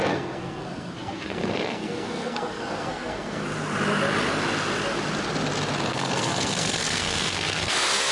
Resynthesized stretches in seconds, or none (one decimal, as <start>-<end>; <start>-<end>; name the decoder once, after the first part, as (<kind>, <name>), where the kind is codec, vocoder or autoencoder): 0.0-3.4 (codec, SNAC); 5.9-8.1

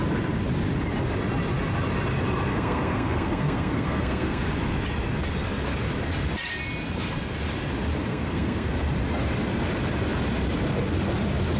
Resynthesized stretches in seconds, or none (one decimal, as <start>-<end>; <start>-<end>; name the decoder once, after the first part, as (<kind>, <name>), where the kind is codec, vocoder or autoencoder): 2.5-4.4 (codec, SNAC); 8.1-8.7

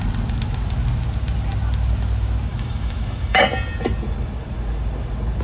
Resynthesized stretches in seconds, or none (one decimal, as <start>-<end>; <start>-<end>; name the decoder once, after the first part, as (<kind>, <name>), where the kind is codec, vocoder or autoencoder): 2.5-3.4 (autoencoder, DAC-VAE)

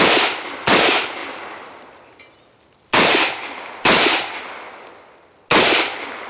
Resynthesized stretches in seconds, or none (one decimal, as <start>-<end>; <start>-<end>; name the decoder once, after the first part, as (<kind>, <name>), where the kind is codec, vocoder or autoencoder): none